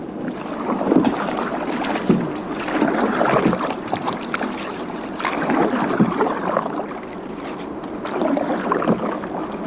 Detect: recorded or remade recorded